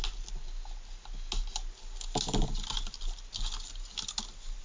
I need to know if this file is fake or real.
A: real